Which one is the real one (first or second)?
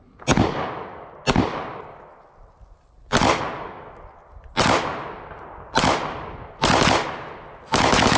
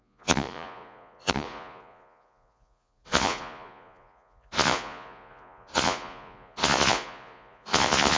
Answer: first